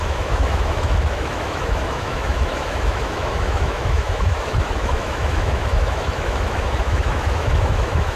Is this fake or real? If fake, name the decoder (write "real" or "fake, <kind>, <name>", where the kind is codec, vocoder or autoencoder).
fake, autoencoder, DAC-VAE